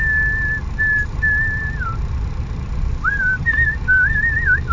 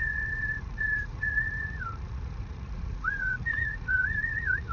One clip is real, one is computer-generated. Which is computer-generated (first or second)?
second